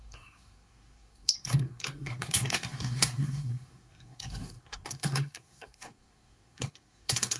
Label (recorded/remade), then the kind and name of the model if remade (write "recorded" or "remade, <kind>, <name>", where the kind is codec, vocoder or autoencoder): remade, codec, SNAC